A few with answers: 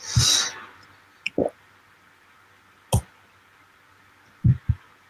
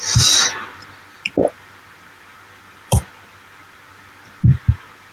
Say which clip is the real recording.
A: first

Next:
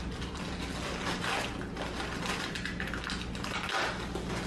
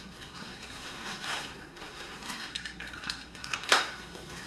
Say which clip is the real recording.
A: first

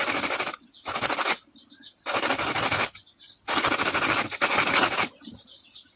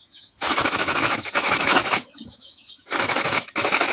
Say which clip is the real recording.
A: first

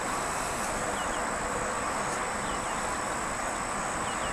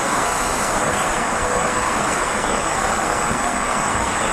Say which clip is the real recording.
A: first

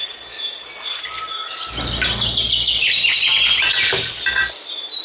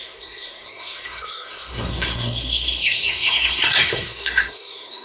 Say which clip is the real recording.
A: first